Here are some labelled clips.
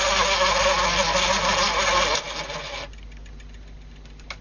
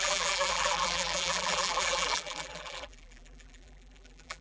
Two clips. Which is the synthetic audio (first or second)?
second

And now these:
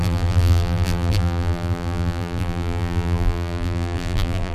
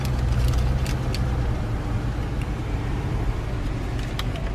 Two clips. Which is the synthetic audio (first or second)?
first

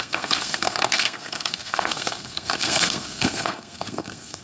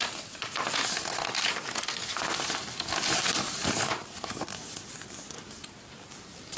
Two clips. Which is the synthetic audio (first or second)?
first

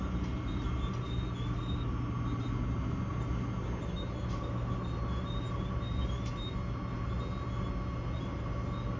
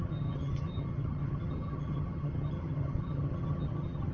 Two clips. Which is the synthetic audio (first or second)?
second